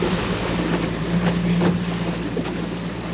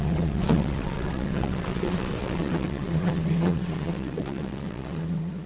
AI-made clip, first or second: second